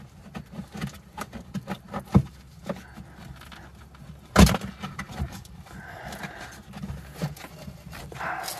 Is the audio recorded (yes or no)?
yes